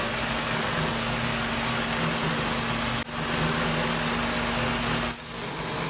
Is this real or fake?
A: real